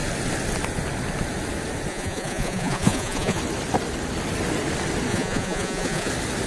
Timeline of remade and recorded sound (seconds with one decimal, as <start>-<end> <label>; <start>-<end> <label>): 0.0-1.9 recorded; 1.9-3.4 remade; 3.4-5.1 recorded; 5.1-6.1 remade; 6.1-6.5 recorded